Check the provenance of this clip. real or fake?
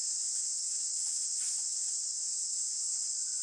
fake